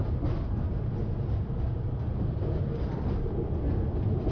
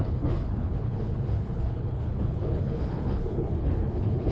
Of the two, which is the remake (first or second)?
second